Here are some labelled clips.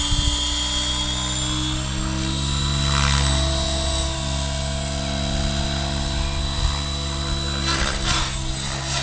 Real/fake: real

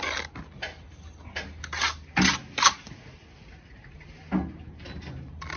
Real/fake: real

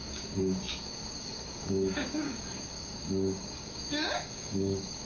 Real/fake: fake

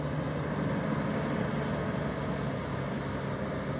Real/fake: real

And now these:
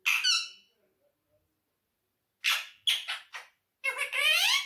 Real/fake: real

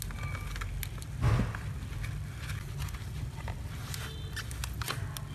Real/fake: real